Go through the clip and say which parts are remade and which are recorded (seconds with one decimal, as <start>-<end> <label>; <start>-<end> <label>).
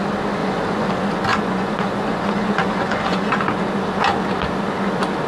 0.0-0.4 recorded; 0.4-0.9 remade; 0.9-1.3 recorded; 1.3-3.7 remade; 3.7-5.3 recorded